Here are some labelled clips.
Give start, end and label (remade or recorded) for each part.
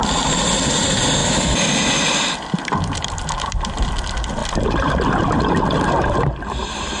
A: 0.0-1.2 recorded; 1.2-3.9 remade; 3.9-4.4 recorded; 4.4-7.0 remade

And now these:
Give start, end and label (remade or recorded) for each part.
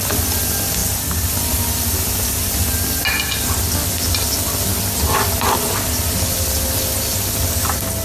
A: 0.0-8.0 recorded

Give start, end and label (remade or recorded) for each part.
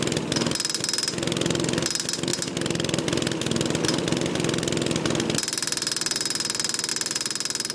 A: 0.0-7.7 recorded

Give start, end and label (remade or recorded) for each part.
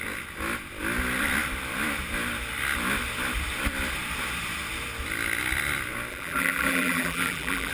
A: 0.0-6.1 recorded; 6.1-7.7 remade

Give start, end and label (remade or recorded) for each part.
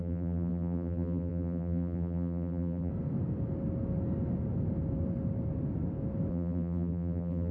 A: 0.0-2.9 remade; 2.9-6.3 recorded; 6.3-7.5 remade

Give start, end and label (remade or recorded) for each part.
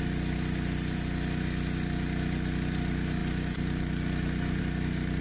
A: 0.0-5.2 recorded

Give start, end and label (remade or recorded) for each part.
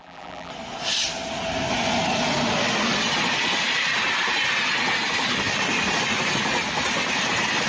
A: 0.0-0.5 remade; 0.5-7.7 recorded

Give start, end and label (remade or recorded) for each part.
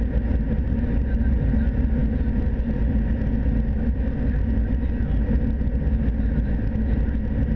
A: 0.0-7.6 recorded